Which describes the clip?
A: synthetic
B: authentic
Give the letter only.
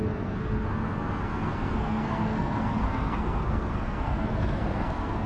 A